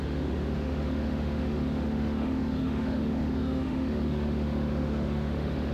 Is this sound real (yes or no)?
no